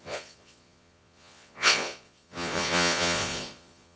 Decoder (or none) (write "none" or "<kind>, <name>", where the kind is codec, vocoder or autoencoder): vocoder, Vocos